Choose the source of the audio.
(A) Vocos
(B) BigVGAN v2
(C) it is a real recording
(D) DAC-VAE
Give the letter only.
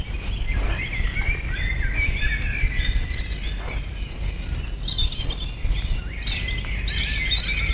C